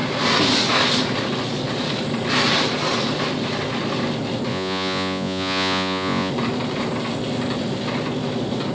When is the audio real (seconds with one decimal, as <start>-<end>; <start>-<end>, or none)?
0.0-4.5; 6.3-8.7